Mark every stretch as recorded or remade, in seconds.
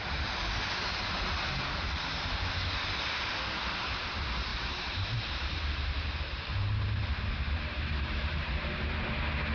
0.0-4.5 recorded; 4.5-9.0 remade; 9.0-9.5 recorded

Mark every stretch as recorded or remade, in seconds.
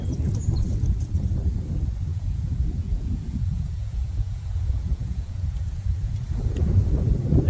0.0-2.1 recorded; 2.1-6.6 remade; 6.6-7.5 recorded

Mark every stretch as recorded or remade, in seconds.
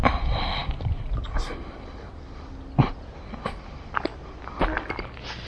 0.0-5.5 recorded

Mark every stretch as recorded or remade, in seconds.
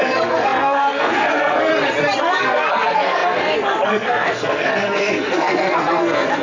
0.0-1.7 remade; 1.7-2.2 recorded; 2.2-6.4 remade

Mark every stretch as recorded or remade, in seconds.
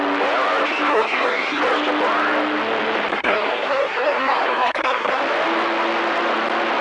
0.0-0.9 recorded; 0.9-1.6 remade; 1.6-3.1 recorded; 3.1-5.2 remade; 5.2-6.8 recorded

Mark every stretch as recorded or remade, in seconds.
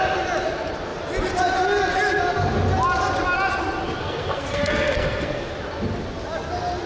0.0-4.0 recorded; 4.0-5.5 remade; 5.5-6.9 recorded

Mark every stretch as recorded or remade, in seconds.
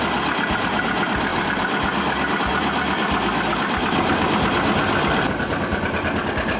0.0-6.6 recorded